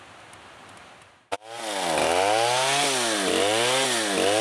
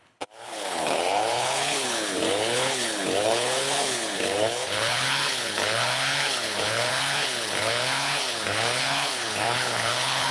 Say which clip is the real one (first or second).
first